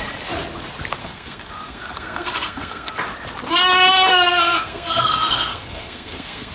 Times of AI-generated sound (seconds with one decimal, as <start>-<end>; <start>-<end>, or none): 1.0-2.9; 4.1-6.5